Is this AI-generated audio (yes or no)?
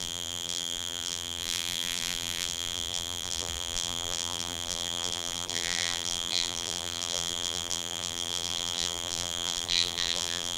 yes